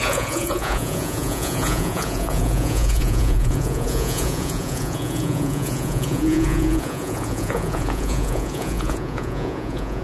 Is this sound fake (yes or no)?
yes